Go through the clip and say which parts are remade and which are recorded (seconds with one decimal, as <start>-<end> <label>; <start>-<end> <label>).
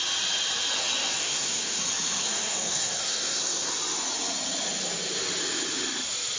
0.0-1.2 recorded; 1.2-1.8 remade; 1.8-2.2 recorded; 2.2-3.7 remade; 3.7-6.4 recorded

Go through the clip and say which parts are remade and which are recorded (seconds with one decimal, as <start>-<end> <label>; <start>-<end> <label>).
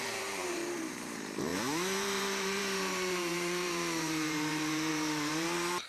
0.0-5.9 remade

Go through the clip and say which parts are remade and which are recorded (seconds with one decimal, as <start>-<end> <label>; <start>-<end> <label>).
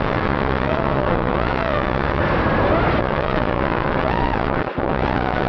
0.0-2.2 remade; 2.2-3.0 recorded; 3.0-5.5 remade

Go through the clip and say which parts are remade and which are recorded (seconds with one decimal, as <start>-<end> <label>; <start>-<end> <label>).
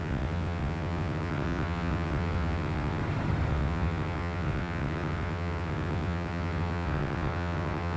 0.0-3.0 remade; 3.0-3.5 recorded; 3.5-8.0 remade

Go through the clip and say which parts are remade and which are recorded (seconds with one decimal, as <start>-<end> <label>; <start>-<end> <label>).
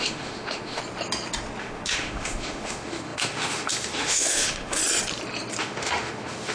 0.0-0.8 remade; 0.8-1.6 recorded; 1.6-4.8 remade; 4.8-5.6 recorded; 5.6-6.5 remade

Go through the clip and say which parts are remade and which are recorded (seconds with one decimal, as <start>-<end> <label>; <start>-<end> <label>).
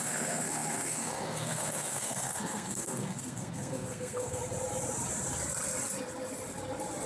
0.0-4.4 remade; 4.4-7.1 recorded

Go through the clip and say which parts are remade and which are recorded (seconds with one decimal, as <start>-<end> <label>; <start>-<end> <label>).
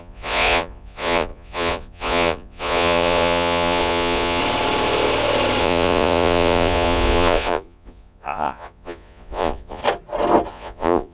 0.0-4.4 remade; 4.4-5.6 recorded; 5.6-9.8 remade; 9.8-10.5 recorded; 10.5-11.1 remade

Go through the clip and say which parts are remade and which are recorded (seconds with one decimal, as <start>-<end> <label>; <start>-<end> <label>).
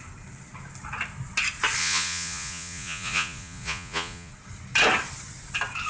0.0-1.8 recorded; 1.8-4.3 remade; 4.3-5.9 recorded